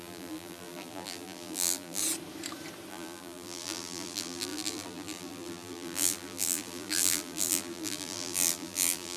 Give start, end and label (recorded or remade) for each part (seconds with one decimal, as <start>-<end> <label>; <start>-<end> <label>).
0.0-2.0 remade; 2.0-2.9 recorded; 2.9-9.2 remade